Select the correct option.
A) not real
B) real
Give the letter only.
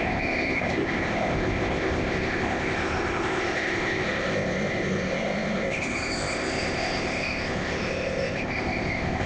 A